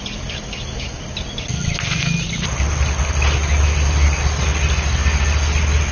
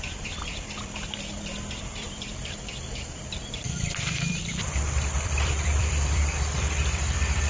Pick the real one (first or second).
first